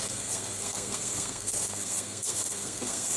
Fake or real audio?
fake